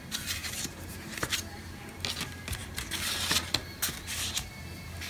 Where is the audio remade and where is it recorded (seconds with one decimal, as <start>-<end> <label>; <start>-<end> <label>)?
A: 0.0-0.4 recorded; 0.4-1.5 remade; 1.5-4.1 recorded; 4.1-4.6 remade; 4.6-5.1 recorded